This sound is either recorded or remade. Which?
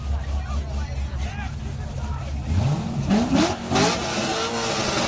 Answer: recorded